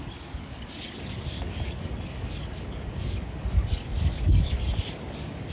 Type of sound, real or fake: fake